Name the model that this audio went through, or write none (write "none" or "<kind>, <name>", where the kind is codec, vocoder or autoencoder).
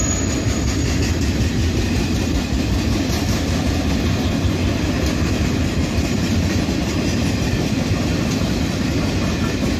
none